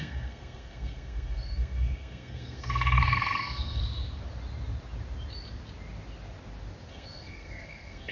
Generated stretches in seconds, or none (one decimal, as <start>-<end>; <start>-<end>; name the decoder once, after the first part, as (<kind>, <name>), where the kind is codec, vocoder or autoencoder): 0.0-3.8 (codec, SNAC); 6.9-8.1